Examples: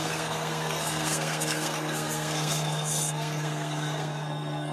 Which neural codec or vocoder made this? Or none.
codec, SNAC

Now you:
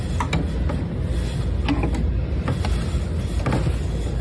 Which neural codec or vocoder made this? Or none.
none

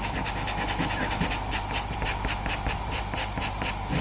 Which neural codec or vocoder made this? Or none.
none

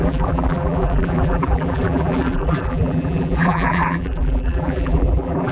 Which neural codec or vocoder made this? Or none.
vocoder, BigVGAN v2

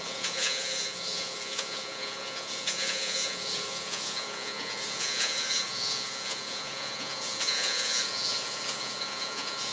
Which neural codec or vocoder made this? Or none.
vocoder, Vocos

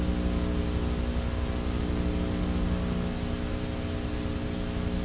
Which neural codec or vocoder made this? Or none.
none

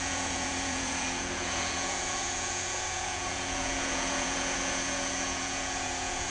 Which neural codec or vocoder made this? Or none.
vocoder, Vocos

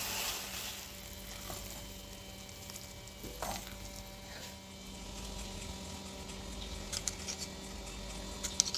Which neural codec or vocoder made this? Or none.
none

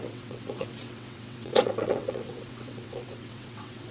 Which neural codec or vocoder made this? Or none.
vocoder, WaveNeXt